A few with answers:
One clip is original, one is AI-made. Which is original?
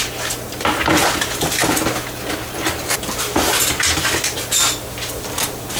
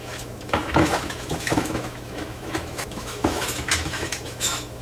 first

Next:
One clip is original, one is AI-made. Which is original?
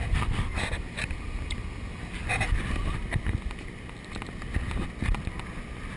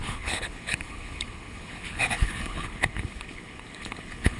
first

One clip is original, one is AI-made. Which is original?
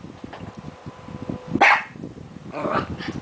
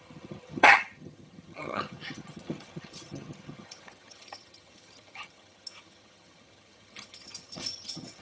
first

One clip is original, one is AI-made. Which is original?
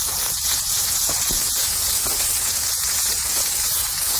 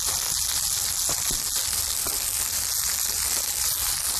second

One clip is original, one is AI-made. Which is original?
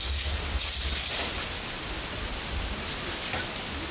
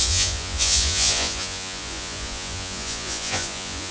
first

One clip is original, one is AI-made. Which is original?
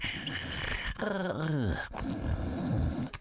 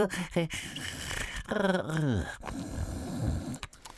first